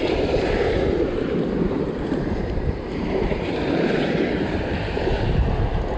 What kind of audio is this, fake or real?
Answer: fake